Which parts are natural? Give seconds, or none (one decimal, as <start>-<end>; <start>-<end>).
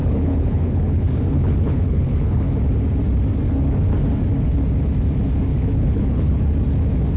2.5-5.5; 6.4-7.2